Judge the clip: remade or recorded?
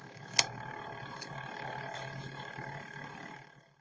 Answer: remade